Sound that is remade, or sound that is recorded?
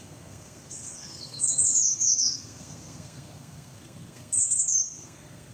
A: remade